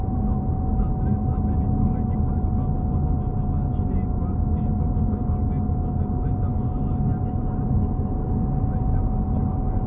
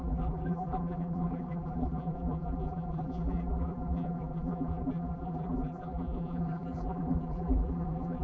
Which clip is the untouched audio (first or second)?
first